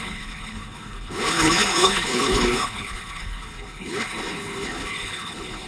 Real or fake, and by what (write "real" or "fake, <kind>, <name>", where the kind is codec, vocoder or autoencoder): fake, codec, HILCodec